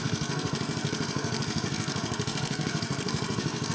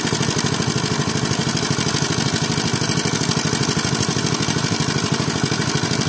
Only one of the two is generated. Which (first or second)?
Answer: first